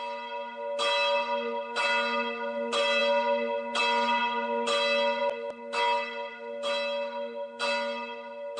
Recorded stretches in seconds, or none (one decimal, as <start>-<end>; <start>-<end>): 0.0-8.6